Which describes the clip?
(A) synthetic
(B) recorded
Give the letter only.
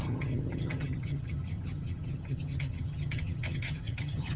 A